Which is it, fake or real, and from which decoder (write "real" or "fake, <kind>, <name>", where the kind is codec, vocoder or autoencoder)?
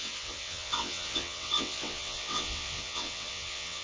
fake, vocoder, WaveNeXt